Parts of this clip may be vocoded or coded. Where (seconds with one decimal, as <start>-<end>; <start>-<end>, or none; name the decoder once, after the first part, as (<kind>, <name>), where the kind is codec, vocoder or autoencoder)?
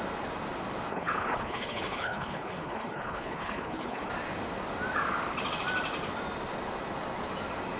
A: 0.9-4.1 (codec, HILCodec)